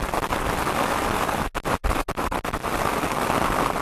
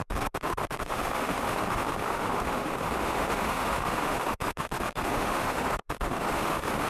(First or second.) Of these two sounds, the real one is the first